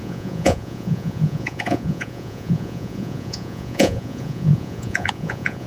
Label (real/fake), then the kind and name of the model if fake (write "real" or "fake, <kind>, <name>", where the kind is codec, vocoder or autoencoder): fake, vocoder, Vocos